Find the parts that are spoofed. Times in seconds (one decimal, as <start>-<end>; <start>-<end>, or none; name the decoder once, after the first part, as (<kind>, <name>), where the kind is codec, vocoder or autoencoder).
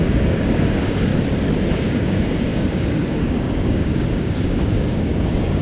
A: 0.0-1.1 (codec, DAC); 1.7-5.6